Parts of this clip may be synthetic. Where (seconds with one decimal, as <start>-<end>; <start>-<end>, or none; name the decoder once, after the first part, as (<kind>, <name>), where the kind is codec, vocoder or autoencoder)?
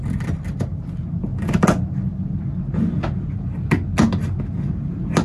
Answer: none